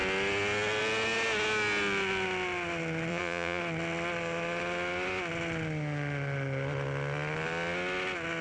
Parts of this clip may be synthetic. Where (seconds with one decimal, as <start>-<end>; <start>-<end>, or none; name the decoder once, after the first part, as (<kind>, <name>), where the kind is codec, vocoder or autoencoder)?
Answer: 3.1-3.6 (vocoder, Vocos)